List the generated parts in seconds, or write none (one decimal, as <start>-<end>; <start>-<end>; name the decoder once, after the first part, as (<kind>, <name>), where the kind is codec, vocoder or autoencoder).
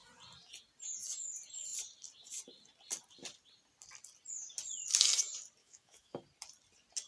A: 5.6-6.2 (autoencoder, DAC-VAE)